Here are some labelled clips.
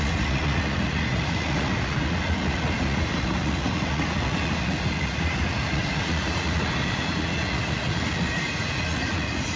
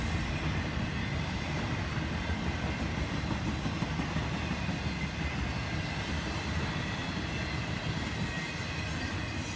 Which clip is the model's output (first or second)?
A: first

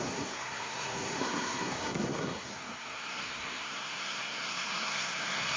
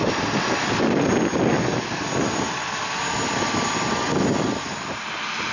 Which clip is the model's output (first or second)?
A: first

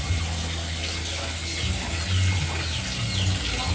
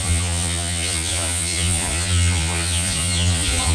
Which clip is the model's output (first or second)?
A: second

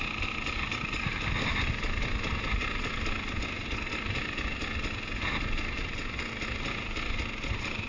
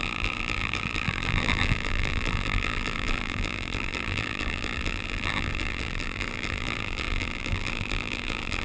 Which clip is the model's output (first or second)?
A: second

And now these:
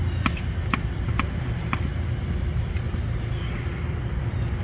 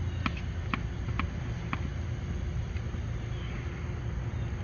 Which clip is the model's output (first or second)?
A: first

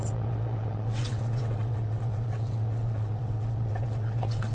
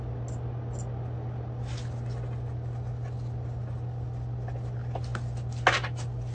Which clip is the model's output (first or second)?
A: first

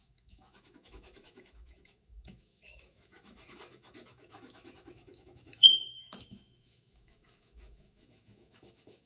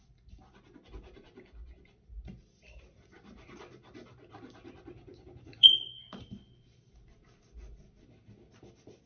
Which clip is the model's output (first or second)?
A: first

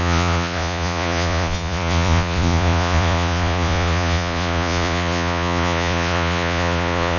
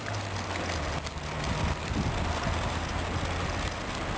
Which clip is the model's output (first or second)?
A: first